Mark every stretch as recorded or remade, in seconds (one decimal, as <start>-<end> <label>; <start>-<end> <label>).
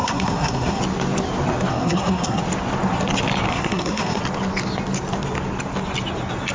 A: 0.0-0.8 remade; 0.8-1.7 recorded; 1.7-2.4 remade; 2.4-3.5 recorded; 3.5-4.2 remade; 4.2-6.5 recorded